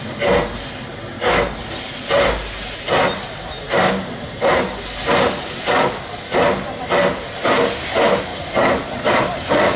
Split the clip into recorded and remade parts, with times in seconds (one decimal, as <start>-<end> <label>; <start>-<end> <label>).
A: 0.0-9.8 recorded